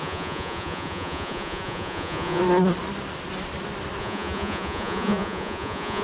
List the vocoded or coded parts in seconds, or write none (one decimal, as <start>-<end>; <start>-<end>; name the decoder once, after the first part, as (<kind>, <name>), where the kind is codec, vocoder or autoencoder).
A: 0.0-2.4 (vocoder, Vocos); 4.0-6.0